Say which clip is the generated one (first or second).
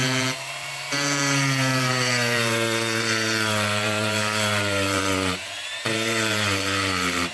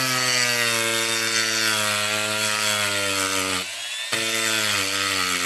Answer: first